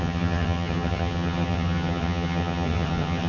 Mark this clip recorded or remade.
remade